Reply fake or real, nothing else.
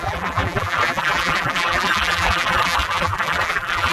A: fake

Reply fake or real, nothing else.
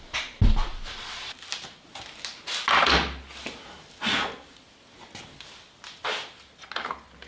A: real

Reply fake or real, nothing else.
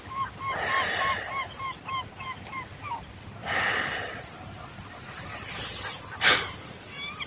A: real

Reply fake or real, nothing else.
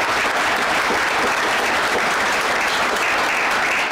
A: real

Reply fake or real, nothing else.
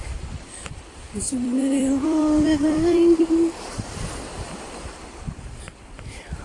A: fake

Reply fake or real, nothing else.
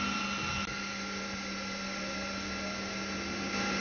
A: real